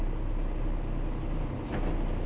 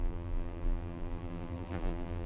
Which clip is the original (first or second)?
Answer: first